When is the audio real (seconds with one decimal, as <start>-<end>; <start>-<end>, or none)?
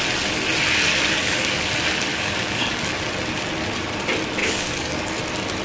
0.0-1.2; 1.7-2.1; 2.9-4.4; 5.1-5.6